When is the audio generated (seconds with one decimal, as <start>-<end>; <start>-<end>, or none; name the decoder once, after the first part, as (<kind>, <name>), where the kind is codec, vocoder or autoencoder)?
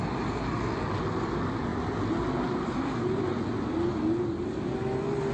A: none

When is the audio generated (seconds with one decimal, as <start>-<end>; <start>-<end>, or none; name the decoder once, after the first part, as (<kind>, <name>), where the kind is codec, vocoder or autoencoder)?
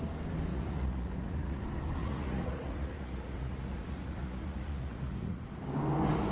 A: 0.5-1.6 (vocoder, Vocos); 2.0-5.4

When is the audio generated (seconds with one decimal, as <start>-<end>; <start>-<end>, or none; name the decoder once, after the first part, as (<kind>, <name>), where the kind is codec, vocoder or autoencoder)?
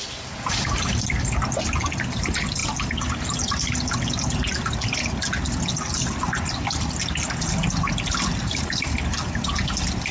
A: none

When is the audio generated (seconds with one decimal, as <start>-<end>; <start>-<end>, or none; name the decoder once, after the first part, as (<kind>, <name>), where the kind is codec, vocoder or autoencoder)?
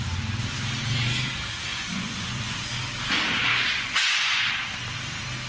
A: 1.7-2.7 (vocoder, Vocos); 3.5-4.5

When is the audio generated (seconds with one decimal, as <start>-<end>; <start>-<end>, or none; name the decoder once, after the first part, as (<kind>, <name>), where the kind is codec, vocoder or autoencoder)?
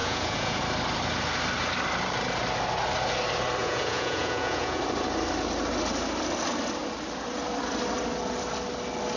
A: 0.0-0.6 (vocoder, Vocos); 3.6-4.8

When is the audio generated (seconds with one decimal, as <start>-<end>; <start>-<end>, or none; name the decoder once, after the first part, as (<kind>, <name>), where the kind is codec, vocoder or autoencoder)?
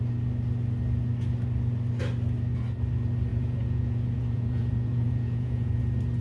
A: 3.3-5.8 (vocoder, Vocos)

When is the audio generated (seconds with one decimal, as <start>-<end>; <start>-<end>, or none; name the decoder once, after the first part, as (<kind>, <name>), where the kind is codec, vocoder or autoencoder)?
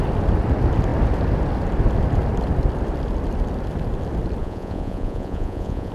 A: 4.4-5.9 (vocoder, Vocos)